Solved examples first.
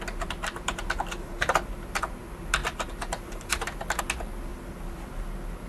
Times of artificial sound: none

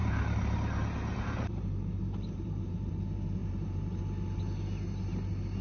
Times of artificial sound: 0.0-2.9 (vocoder, BigVGAN v2); 3.4-4.0

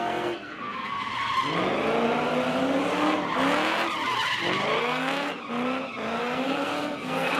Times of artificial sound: 0.0-1.1 (codec, SNAC); 4.8-5.3; 6.2-7.4

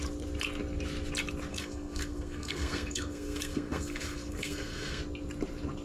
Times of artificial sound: 1.5-5.0 (codec, SNAC)

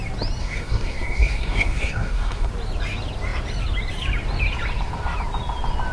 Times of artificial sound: 0.4-2.5 (codec, SNAC)

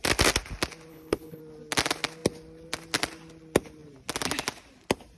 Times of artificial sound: 0.9-1.4 (codec, HILCodec)

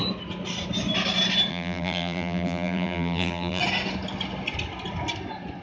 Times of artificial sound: 1.5-3.6 (vocoder, BigVGAN v2)